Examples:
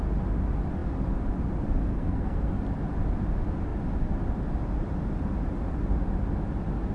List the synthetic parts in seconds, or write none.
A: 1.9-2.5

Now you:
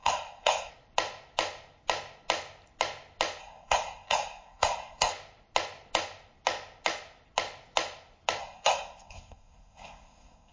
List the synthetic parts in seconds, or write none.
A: 0.0-0.7; 3.4-5.1; 8.4-10.5

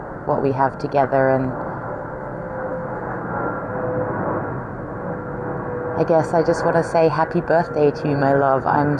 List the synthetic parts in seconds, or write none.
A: none

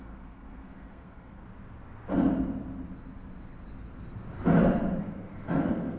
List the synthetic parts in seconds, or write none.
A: 0.0-1.4; 5.0-6.0

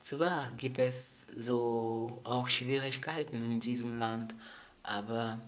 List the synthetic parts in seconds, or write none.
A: 0.0-4.2